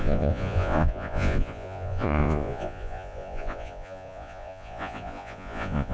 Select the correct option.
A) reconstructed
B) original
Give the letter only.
A